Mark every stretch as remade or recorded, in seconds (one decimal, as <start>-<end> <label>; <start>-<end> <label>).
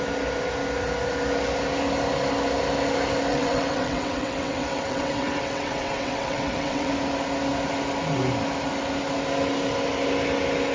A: 0.0-3.3 recorded; 3.3-6.9 remade; 6.9-10.7 recorded